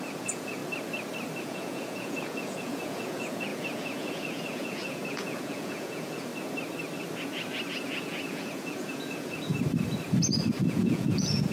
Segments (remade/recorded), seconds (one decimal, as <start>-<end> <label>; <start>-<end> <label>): 0.0-0.6 remade; 0.6-1.4 recorded; 1.4-6.3 remade; 6.3-7.7 recorded; 7.7-9.5 remade; 9.5-10.5 recorded; 10.5-11.5 remade